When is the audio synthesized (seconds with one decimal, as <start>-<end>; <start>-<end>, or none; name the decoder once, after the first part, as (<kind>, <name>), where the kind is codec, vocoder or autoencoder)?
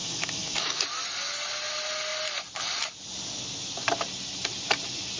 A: 0.0-0.8 (autoencoder, DAC-VAE)